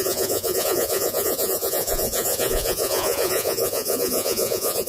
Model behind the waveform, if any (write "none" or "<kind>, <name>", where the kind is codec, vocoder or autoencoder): vocoder, Vocos